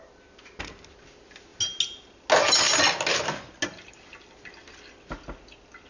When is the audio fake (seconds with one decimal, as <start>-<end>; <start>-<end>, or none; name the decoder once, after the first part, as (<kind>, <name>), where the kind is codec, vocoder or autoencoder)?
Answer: none